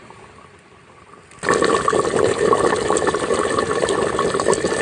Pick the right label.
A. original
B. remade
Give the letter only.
A